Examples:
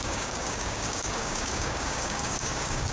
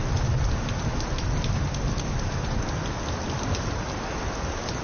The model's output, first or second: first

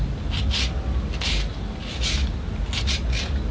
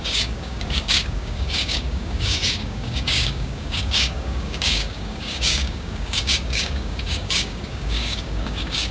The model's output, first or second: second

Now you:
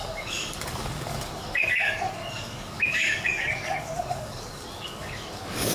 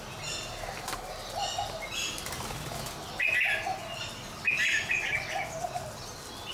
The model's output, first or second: first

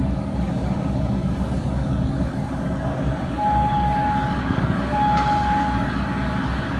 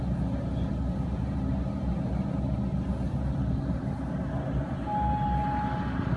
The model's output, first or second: first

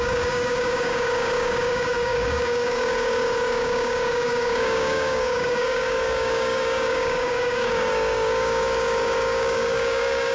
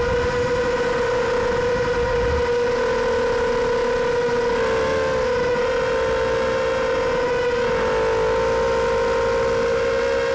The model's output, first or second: first